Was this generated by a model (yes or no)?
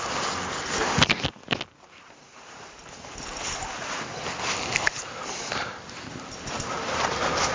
no